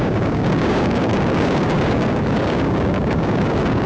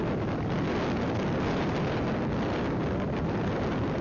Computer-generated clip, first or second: first